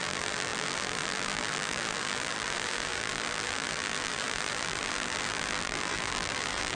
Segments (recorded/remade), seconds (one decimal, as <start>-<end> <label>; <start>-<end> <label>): 0.0-6.7 remade